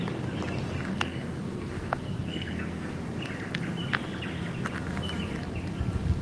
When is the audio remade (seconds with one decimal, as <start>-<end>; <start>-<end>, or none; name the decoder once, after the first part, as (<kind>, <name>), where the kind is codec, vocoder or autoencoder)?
0.9-2.9 (codec, SNAC)